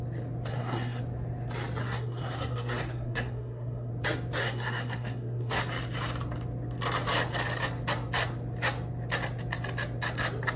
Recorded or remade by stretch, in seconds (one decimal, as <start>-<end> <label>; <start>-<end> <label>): 0.0-0.5 recorded; 0.5-1.0 remade; 1.0-1.8 recorded; 1.8-3.9 remade; 3.9-4.4 recorded; 4.4-5.6 remade; 5.6-10.6 recorded